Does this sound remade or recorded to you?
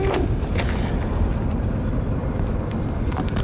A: recorded